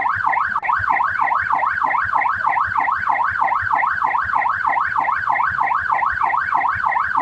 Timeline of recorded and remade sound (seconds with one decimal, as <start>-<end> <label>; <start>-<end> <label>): 0.0-7.2 recorded